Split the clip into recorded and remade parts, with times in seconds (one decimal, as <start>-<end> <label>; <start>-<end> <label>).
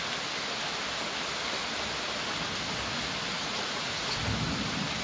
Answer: 0.0-3.4 recorded; 3.4-4.2 remade; 4.2-5.0 recorded